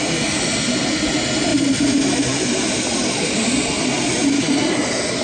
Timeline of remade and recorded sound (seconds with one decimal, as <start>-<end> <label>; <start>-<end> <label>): 0.0-1.5 recorded; 1.5-4.6 remade; 4.6-5.2 recorded